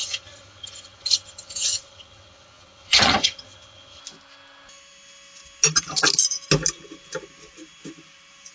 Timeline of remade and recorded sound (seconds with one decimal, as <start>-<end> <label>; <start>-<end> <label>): 0.0-4.0 remade; 4.0-8.5 recorded